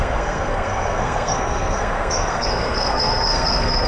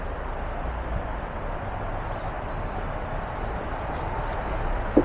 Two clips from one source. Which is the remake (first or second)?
first